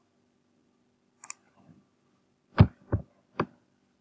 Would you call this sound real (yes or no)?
yes